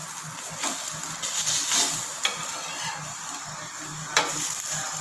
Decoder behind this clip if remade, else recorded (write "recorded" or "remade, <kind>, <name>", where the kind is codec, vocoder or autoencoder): recorded